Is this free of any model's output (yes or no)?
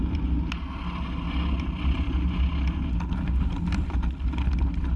yes